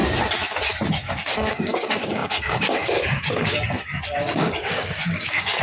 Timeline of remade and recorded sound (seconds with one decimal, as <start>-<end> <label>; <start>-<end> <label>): 0.0-0.9 recorded; 0.9-5.6 remade